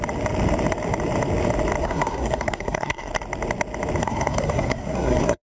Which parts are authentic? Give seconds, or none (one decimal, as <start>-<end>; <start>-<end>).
0.0-1.8; 3.1-4.0